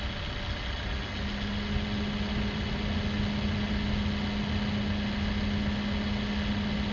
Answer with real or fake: real